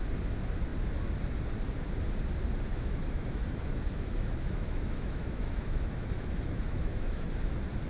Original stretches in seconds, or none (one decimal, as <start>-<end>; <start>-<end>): 0.0-2.7; 7.3-7.9